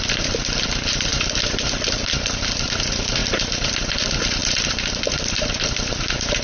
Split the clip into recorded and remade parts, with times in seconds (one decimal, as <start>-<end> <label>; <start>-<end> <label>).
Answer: 0.0-6.4 recorded